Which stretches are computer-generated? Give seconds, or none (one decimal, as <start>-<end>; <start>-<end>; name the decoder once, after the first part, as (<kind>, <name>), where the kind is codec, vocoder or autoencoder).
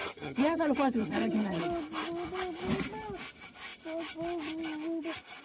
0.0-1.6 (vocoder, HiFi-GAN)